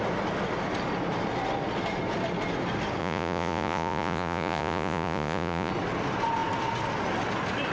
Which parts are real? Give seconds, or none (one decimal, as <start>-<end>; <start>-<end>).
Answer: 0.0-3.0; 5.7-7.7